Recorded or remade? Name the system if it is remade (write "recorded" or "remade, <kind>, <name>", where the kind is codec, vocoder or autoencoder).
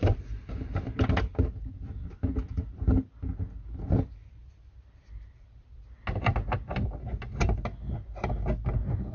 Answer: recorded